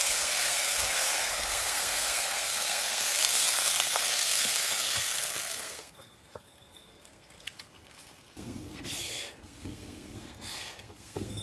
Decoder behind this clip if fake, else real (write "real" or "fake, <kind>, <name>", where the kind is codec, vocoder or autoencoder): fake, codec, SNAC